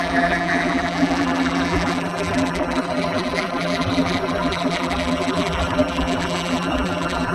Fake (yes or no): yes